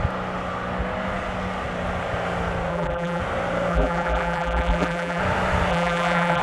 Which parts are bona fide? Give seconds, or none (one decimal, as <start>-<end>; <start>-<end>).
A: 0.0-2.7; 3.2-3.7; 5.2-5.7